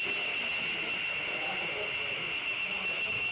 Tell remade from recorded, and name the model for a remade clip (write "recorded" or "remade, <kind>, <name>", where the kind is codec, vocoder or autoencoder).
recorded